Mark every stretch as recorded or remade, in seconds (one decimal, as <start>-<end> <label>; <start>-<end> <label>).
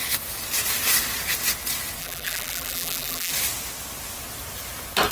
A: 0.0-2.0 recorded; 2.0-3.3 remade; 3.3-5.1 recorded